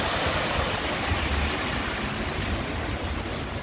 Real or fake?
real